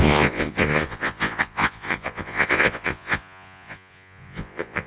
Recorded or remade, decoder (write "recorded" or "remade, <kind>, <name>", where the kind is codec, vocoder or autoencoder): remade, vocoder, Vocos